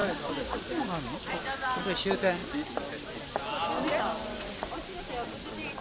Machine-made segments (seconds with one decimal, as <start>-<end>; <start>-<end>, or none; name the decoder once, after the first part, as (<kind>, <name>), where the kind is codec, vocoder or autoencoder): 0.0-1.8 (vocoder, BigVGAN v2)